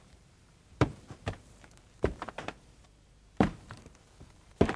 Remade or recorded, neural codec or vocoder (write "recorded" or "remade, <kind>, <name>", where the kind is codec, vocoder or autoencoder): remade, vocoder, BigVGAN v2